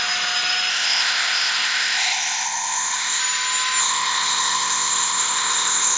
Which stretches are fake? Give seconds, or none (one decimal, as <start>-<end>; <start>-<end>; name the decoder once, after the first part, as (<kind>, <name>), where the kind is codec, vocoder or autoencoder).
0.7-3.2 (codec, ZipCodec); 3.8-6.0